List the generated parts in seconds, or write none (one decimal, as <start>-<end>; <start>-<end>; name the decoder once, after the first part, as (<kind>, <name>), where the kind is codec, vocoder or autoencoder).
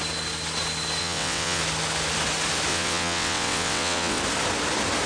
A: 1.0-1.6 (vocoder, WaveNeXt); 2.7-4.2